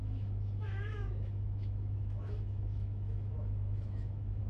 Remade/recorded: remade